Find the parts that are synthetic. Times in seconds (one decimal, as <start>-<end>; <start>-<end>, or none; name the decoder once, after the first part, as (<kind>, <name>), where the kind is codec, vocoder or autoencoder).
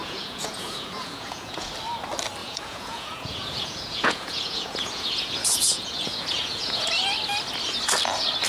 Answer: 0.0-1.7 (vocoder, Vocos); 2.4-6.9